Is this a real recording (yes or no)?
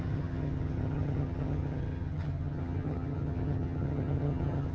no